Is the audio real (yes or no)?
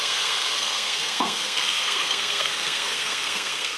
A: no